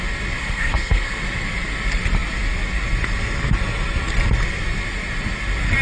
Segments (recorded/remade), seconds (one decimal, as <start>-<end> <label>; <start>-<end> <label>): 0.0-0.4 recorded; 0.4-1.2 remade; 1.2-5.8 recorded